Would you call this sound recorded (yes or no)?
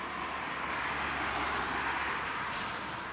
yes